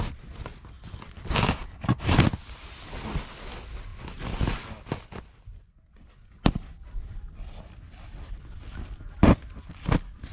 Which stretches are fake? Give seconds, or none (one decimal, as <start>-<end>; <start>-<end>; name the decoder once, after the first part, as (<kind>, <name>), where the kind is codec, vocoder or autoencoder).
none